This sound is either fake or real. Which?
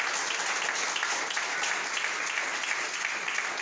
real